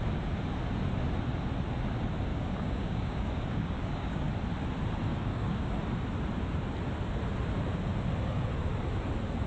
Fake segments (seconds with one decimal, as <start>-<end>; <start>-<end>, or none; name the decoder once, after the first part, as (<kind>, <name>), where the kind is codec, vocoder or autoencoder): 2.3-4.3 (codec, DAC); 5.1-5.7